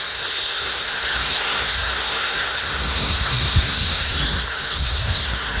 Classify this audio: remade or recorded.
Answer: remade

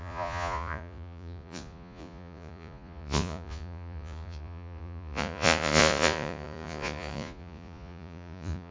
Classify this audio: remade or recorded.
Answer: remade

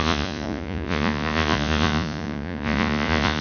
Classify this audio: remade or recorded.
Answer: remade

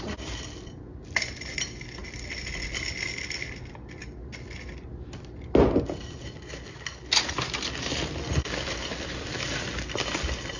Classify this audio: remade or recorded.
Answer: recorded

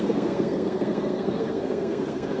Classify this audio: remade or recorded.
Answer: remade